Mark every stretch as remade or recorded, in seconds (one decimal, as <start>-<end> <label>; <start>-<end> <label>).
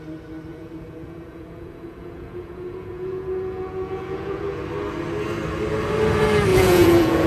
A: 0.0-0.5 recorded; 0.5-4.6 remade; 4.6-6.5 recorded; 6.5-7.3 remade